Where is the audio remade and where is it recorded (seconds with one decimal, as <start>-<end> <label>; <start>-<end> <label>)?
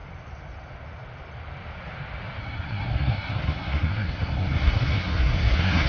0.0-2.4 recorded; 2.4-5.9 remade